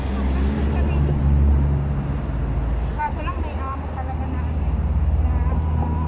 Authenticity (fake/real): real